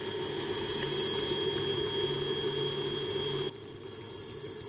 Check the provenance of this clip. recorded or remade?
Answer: recorded